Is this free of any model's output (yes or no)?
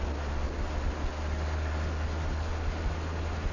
yes